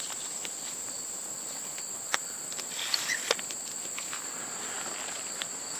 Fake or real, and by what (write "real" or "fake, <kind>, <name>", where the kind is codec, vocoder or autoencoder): real